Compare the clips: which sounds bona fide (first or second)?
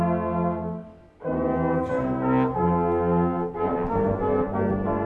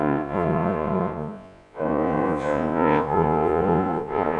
first